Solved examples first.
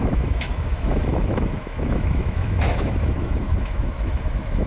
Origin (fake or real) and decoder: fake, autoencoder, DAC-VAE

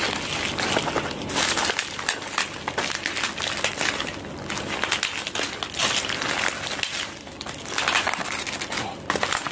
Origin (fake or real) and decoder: real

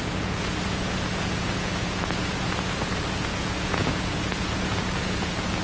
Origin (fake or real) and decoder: fake, vocoder, Vocos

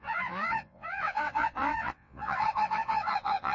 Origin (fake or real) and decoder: fake, vocoder, WaveNeXt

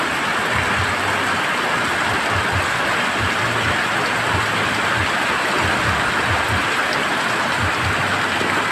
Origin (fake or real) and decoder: real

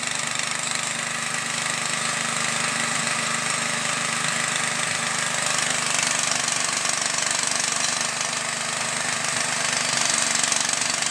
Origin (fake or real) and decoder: real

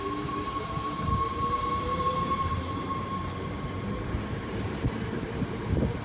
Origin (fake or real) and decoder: fake, vocoder, BigVGAN v2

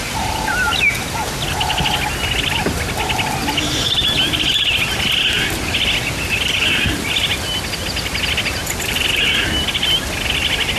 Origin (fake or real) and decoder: real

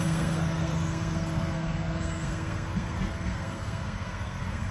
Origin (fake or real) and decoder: fake, codec, SNAC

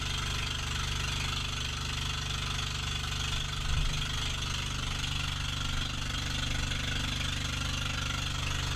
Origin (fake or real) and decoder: real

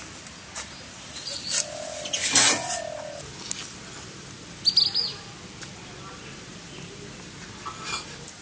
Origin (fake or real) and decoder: real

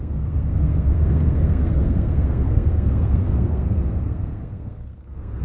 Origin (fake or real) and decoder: fake, codec, SNAC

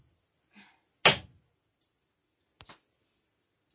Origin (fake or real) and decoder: real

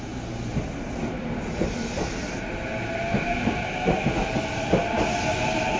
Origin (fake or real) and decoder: real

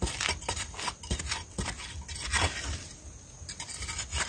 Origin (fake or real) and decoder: real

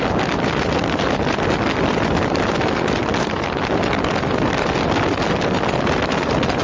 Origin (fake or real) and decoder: real